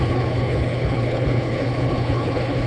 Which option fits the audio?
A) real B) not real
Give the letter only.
B